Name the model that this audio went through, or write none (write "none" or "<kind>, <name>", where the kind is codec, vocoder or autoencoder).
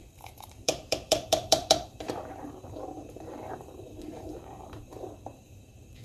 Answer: vocoder, BigVGAN v2